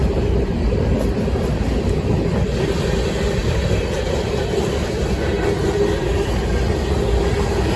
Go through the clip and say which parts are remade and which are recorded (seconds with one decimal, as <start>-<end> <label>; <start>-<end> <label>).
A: 0.0-0.8 remade; 0.8-7.8 recorded